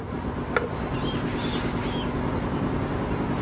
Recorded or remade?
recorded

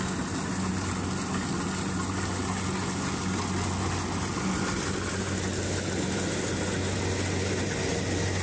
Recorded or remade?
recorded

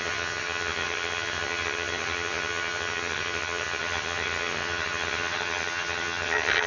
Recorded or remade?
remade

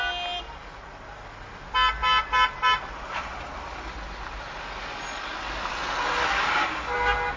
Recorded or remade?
recorded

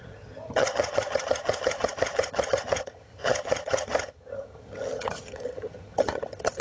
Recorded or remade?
remade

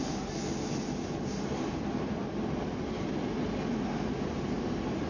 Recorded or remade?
recorded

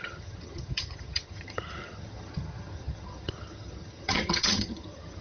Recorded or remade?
remade